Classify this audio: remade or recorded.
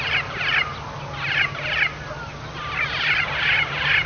recorded